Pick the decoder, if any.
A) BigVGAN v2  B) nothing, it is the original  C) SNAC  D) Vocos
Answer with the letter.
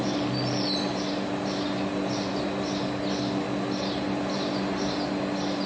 B